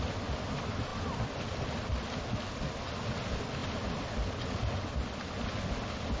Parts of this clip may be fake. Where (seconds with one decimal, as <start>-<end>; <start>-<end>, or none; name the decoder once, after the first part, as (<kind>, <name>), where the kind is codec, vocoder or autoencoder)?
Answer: 0.9-1.8 (vocoder, BigVGAN v2)